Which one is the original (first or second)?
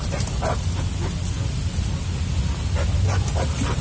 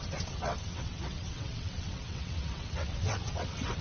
first